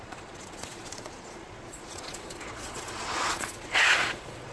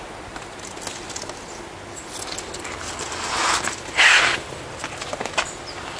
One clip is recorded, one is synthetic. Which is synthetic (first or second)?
first